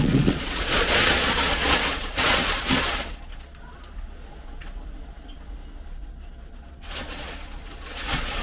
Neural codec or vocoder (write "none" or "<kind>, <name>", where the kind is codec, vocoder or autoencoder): vocoder, Vocos